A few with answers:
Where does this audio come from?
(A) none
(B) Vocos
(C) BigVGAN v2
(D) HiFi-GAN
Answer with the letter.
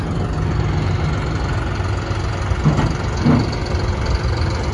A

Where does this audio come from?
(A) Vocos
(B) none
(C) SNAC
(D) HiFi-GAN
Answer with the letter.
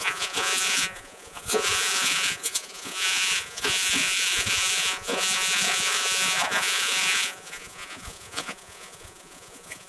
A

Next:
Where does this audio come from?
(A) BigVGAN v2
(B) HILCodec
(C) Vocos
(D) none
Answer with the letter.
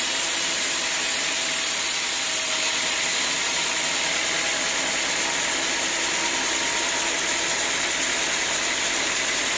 D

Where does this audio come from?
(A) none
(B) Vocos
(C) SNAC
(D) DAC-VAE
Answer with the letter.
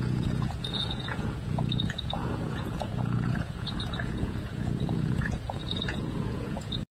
B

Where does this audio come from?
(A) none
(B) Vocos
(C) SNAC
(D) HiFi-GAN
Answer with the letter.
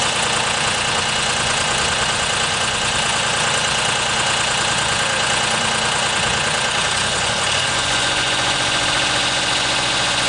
B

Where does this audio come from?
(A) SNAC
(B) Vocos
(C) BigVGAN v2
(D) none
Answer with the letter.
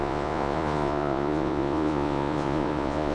B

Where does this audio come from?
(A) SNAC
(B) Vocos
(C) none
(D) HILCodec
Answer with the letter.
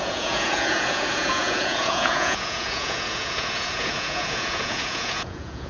B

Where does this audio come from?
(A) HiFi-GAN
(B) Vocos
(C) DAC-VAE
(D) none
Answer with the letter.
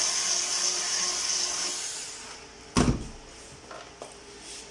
D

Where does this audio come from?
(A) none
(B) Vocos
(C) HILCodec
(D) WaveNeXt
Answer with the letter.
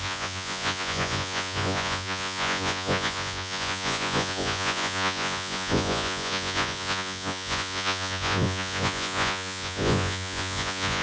B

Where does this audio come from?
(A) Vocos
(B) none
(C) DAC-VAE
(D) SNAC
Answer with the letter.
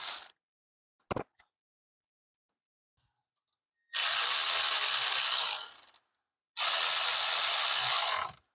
B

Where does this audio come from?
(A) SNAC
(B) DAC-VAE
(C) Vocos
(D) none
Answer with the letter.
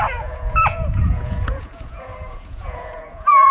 C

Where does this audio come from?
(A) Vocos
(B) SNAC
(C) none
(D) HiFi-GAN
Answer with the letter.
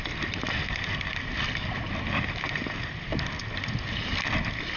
C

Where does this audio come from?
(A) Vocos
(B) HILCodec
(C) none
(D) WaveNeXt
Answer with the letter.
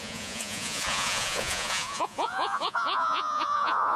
A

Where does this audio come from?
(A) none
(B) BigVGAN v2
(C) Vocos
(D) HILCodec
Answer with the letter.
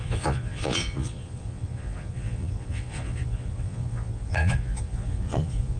C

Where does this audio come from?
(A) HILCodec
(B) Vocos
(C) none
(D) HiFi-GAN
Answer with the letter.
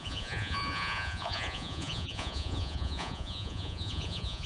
B